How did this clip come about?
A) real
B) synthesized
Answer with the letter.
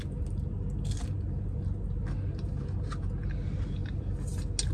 A